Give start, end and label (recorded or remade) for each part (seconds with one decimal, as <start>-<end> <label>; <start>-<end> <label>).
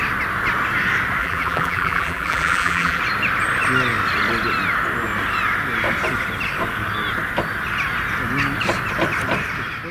0.0-1.2 recorded; 1.2-3.0 remade; 3.0-9.9 recorded